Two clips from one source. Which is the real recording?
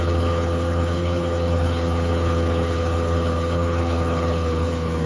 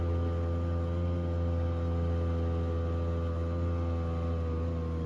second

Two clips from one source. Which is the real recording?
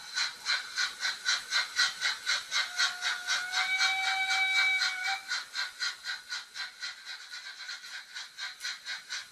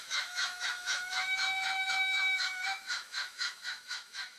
first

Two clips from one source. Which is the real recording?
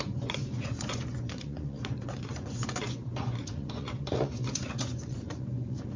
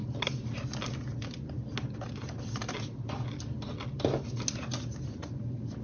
second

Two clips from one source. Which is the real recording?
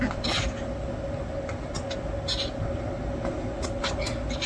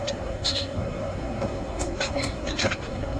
first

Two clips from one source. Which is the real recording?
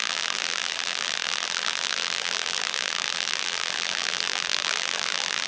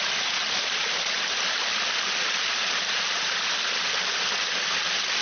second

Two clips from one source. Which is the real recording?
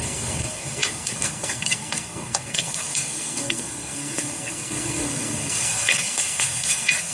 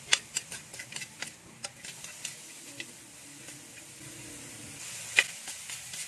second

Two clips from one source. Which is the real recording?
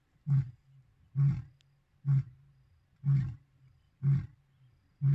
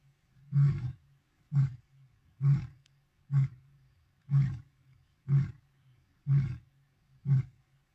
first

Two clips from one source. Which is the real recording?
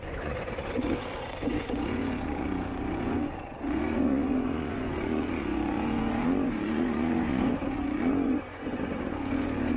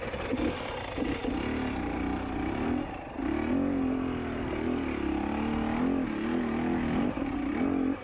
second